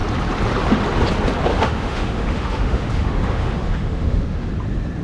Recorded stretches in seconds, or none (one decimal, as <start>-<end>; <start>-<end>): 0.0-1.5; 4.5-5.0